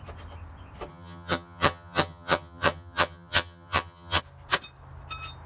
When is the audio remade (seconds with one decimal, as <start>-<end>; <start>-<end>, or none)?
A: 0.9-4.2